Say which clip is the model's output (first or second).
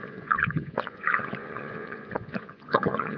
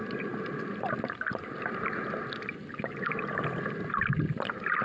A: first